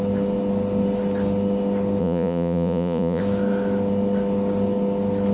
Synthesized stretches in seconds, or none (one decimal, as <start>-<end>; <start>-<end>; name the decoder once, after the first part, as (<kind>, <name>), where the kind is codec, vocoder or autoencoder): 2.0-3.2 (vocoder, Vocos)